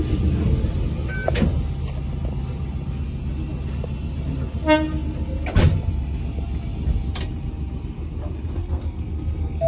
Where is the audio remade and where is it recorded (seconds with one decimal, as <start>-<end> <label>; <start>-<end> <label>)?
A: 0.0-8.6 recorded; 8.6-9.7 remade